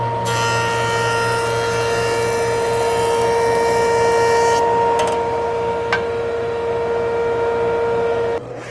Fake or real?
real